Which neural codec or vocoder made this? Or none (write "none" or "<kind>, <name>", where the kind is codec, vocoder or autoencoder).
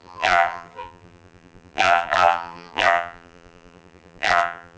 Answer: vocoder, BigVGAN v2